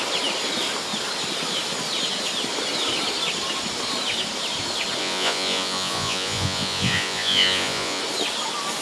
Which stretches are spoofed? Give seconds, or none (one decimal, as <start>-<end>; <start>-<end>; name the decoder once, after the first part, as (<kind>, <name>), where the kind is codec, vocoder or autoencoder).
5.0-8.0 (vocoder, Vocos)